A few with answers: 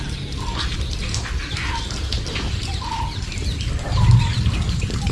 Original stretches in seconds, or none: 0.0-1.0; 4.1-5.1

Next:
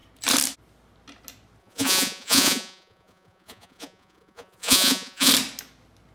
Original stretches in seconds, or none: 0.0-1.6; 5.3-6.1